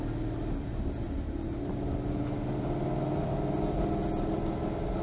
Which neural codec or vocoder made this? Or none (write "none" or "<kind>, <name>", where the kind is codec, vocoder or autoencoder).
none